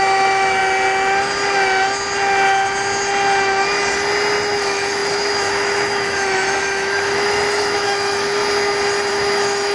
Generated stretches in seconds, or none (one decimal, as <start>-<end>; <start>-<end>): 0.0-0.6; 4.6-8.4; 9.1-9.7